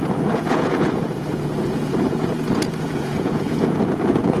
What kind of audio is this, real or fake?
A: fake